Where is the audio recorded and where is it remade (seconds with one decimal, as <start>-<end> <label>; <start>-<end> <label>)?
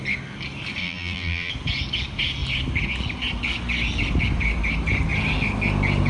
0.0-0.8 recorded; 0.8-1.5 remade; 1.5-6.1 recorded